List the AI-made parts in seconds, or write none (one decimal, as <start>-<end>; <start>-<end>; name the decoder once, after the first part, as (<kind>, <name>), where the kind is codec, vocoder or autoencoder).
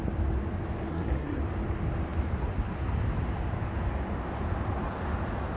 0.9-1.4 (codec, SNAC)